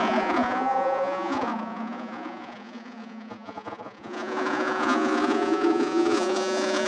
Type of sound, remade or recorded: remade